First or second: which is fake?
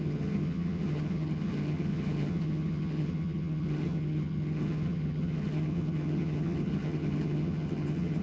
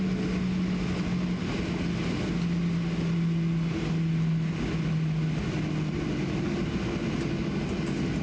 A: first